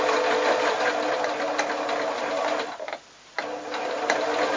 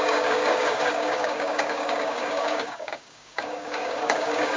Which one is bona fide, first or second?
first